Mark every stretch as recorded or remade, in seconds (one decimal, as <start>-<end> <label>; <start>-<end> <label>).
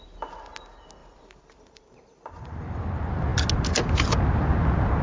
0.0-1.0 recorded; 1.0-2.8 remade; 2.8-5.0 recorded